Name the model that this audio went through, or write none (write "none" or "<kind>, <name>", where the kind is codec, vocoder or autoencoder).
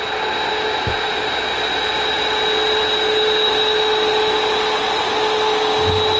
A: none